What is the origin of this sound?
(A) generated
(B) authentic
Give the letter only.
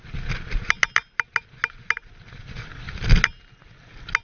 B